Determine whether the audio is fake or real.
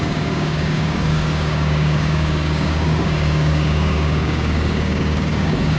fake